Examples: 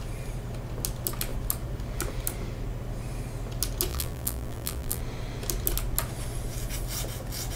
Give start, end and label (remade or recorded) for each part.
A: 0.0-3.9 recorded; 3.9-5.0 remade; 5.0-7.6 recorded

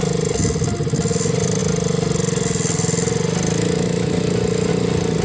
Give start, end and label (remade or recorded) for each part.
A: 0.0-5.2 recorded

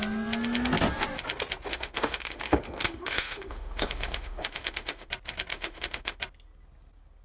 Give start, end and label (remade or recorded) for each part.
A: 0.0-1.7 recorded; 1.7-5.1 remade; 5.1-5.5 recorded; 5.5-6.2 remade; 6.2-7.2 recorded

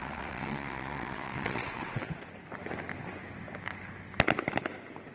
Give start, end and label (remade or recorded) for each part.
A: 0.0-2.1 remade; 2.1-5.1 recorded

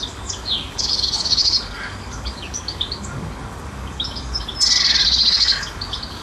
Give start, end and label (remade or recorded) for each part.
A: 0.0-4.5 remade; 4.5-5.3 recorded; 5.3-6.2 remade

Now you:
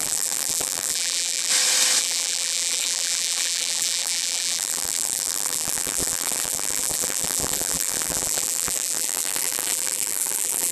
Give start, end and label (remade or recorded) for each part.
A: 0.0-1.5 remade; 1.5-2.0 recorded; 2.0-10.7 remade

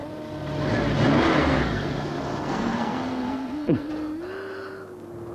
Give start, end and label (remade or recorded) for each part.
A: 0.0-1.4 recorded; 1.4-3.9 remade; 3.9-5.3 recorded

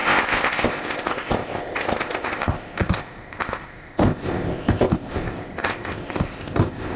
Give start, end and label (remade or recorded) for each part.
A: 0.0-7.0 remade